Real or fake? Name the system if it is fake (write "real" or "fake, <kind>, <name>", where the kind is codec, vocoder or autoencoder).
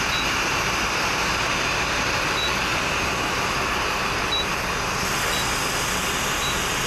real